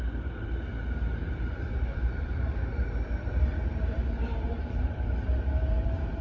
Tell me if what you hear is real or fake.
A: fake